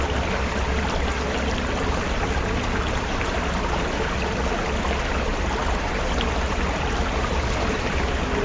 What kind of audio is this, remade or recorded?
recorded